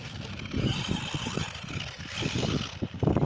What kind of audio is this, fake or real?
real